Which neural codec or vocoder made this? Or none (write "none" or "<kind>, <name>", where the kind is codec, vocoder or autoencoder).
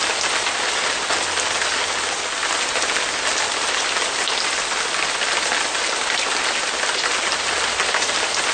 none